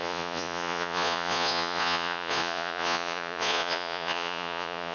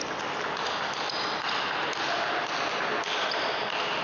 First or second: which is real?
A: second